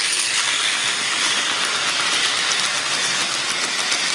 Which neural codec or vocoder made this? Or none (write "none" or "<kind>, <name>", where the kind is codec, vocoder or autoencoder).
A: none